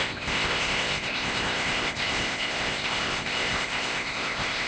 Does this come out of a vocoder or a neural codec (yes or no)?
yes